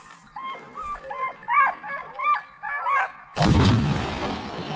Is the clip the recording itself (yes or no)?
no